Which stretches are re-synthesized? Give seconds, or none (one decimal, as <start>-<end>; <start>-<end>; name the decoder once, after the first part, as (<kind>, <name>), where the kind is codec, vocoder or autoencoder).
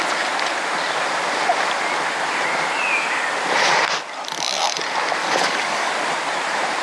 5.2-5.9 (codec, DAC)